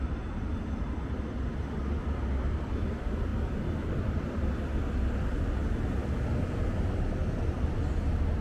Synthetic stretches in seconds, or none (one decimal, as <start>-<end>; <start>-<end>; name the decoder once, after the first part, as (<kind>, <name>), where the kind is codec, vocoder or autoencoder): none